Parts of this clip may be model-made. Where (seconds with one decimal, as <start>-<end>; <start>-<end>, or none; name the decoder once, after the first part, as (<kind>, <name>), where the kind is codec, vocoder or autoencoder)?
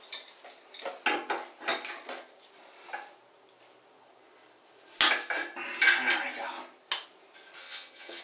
7.6-8.2 (vocoder, HiFi-GAN)